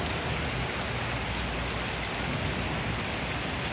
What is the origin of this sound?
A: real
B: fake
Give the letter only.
A